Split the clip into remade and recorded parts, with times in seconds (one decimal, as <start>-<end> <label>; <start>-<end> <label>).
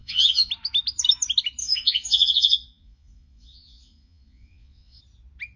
0.0-0.5 remade; 0.5-1.6 recorded; 1.6-5.0 remade; 5.0-5.6 recorded